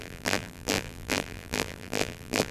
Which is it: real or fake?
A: fake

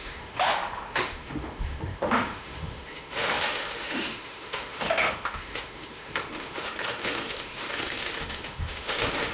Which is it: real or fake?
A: fake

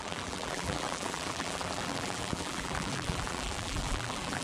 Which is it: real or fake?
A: fake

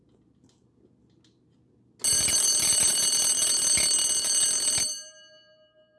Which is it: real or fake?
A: real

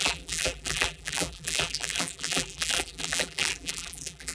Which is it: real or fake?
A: fake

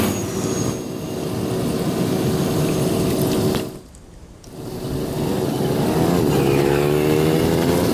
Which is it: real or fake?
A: real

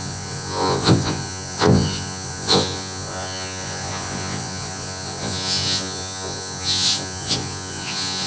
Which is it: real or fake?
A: fake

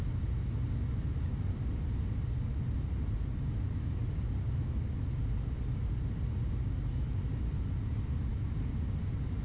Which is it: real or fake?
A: real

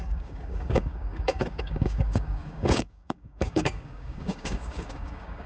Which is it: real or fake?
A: fake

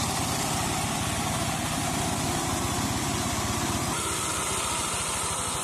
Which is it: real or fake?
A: real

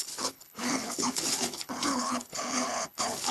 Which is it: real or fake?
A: fake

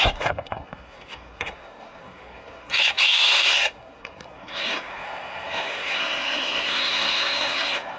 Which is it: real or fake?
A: fake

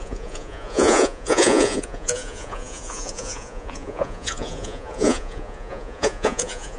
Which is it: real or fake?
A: fake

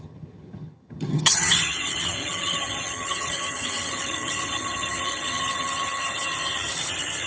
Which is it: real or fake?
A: fake